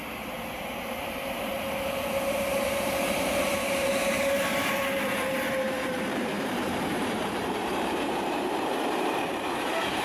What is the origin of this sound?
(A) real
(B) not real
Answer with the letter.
B